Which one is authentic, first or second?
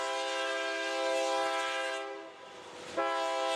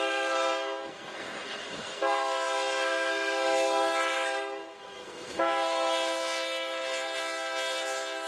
first